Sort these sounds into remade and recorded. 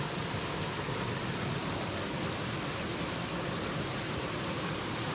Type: recorded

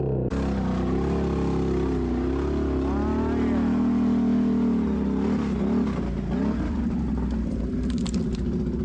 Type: recorded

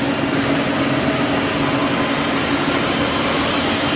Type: recorded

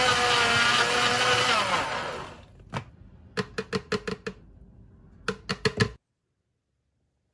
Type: recorded